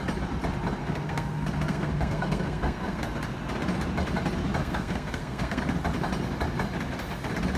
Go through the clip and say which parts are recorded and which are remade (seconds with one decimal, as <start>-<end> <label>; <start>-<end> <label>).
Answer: 0.0-0.8 recorded; 0.8-3.0 remade; 3.0-4.6 recorded; 4.6-5.6 remade; 5.6-7.6 recorded

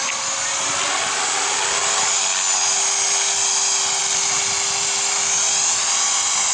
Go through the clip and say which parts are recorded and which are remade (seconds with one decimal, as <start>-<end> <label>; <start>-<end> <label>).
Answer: 0.0-6.5 recorded

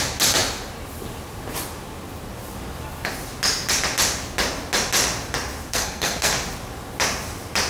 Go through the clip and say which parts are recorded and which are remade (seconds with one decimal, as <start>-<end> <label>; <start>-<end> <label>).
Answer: 0.0-5.7 recorded; 5.7-6.3 remade; 6.3-7.7 recorded

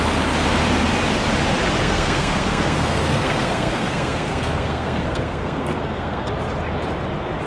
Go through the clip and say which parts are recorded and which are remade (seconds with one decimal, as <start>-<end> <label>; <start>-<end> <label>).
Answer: 0.0-1.8 recorded; 1.8-6.3 remade; 6.3-7.5 recorded

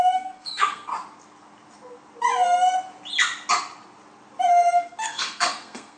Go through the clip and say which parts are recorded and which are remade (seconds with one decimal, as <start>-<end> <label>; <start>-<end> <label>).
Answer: 0.0-0.9 remade; 0.9-4.5 recorded; 4.5-6.0 remade

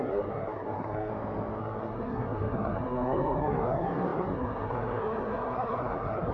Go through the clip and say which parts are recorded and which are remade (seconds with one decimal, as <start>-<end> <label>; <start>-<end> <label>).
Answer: 0.0-1.1 remade; 1.1-1.6 recorded; 1.6-6.3 remade